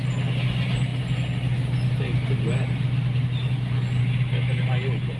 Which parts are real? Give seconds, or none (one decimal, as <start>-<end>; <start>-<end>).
0.0-5.2